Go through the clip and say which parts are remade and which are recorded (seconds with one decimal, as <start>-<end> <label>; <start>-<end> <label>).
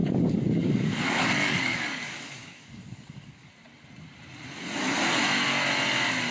0.0-3.5 remade; 3.5-6.3 recorded